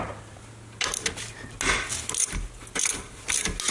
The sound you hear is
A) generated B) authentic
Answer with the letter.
B